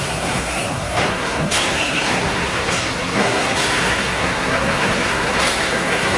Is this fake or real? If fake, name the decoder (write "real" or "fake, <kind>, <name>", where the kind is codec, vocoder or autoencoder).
fake, codec, SNAC